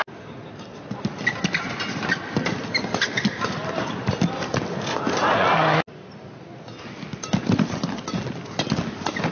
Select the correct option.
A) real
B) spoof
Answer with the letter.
A